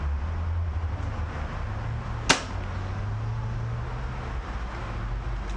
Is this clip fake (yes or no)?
no